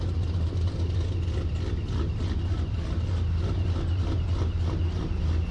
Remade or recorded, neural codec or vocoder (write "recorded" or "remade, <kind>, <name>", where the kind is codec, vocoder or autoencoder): recorded